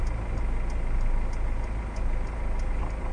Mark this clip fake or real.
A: real